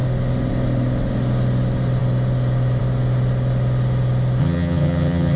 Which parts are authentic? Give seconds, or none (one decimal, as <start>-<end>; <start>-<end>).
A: 0.0-4.4